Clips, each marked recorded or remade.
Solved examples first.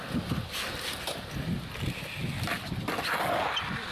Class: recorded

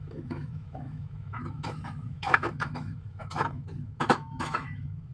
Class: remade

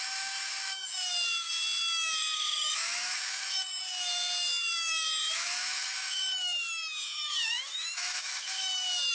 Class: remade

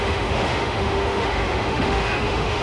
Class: remade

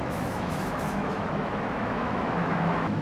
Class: remade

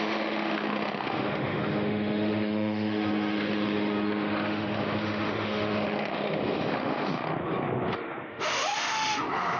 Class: remade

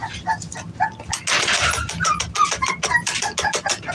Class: recorded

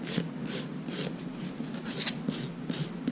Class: recorded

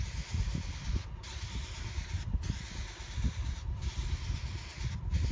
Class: recorded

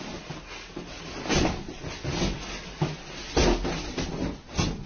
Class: recorded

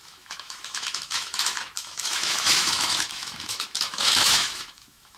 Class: remade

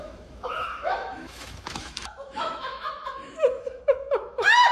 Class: remade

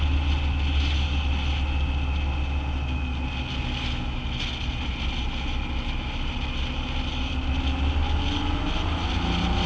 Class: recorded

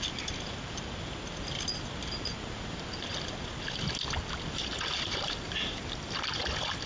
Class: recorded